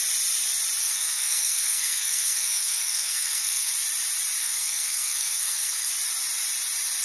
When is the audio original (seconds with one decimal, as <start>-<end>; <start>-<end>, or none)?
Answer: 0.0-0.8; 3.7-4.4; 5.9-7.0